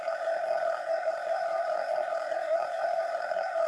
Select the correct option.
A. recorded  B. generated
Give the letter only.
B